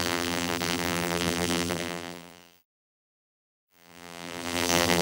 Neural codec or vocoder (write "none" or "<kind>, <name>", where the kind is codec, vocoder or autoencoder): vocoder, BigVGAN v2